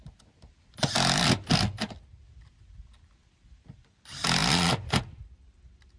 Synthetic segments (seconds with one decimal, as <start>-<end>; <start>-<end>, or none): none